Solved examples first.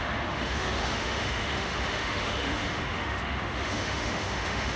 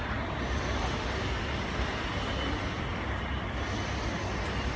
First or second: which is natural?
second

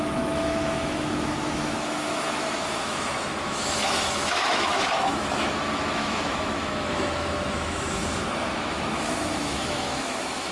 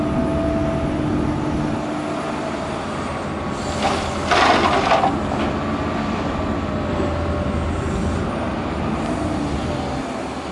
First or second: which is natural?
second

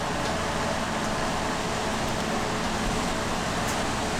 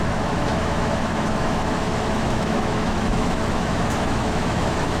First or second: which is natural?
first